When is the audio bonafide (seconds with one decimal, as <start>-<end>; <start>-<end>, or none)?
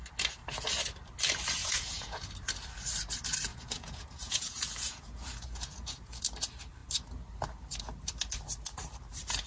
0.0-1.6; 2.3-3.5; 6.2-9.5